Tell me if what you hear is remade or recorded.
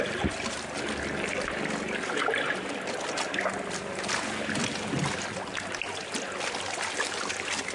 recorded